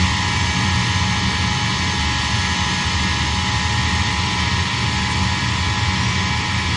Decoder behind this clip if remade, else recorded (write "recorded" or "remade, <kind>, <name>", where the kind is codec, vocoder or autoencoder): recorded